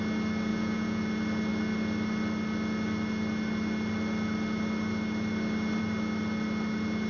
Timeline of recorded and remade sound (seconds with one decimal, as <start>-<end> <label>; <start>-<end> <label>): 0.0-0.5 recorded; 0.5-1.0 remade; 1.0-7.1 recorded

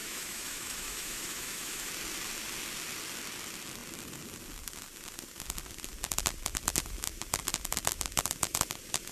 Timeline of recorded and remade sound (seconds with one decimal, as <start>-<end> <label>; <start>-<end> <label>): 0.0-1.9 remade; 1.9-9.1 recorded